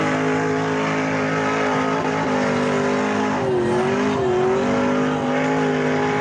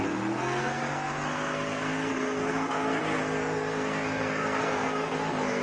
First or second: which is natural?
first